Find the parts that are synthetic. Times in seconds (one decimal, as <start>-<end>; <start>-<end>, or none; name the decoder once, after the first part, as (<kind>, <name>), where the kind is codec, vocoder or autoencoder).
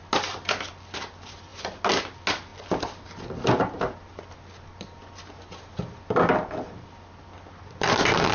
none